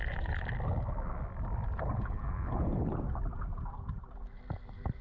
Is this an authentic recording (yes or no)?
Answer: yes